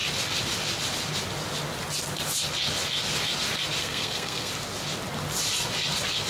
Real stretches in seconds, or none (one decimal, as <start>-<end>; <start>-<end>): 0.0-3.8; 4.5-6.3